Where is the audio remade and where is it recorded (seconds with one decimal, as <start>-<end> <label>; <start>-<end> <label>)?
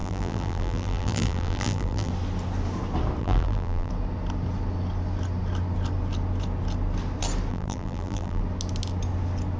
0.0-2.1 remade; 2.1-3.2 recorded; 3.2-3.9 remade; 3.9-7.5 recorded; 7.5-8.4 remade; 8.4-9.6 recorded